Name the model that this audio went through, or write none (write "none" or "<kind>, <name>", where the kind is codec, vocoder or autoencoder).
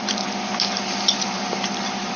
vocoder, BigVGAN v2